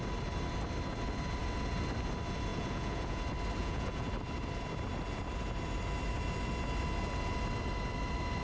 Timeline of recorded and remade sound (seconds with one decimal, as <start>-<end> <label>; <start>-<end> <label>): 0.0-2.5 recorded; 2.5-3.2 remade; 3.2-3.6 recorded; 3.6-4.1 remade; 4.1-8.4 recorded

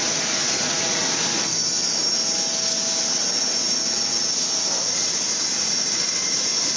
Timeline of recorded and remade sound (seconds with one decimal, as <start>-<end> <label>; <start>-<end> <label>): 0.0-1.5 remade; 1.5-5.6 recorded; 5.6-6.8 remade

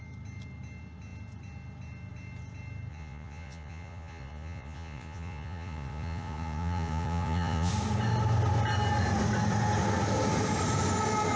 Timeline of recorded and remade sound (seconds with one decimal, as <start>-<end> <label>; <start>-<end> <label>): 0.0-2.9 recorded; 2.9-7.7 remade; 7.7-11.4 recorded

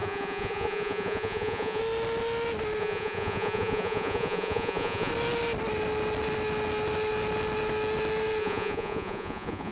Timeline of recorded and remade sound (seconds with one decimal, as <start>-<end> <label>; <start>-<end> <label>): 0.0-1.8 remade; 1.8-2.8 recorded; 2.8-5.1 remade; 5.1-8.4 recorded; 8.4-9.7 remade

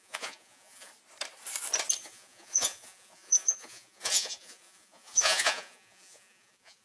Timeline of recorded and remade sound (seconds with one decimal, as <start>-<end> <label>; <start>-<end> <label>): 0.0-0.9 remade; 0.9-2.0 recorded; 2.0-6.8 remade

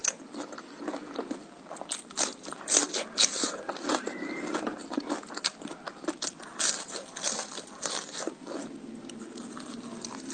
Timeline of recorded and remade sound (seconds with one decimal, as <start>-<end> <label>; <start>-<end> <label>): 0.0-10.3 recorded